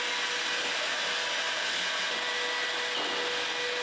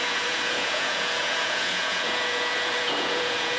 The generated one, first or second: second